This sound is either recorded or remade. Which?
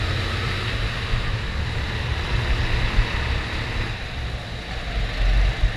recorded